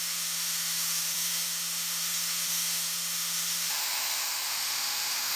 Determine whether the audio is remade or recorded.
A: remade